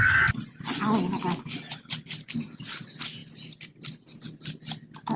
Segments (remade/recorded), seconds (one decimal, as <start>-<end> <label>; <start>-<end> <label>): 0.0-5.2 recorded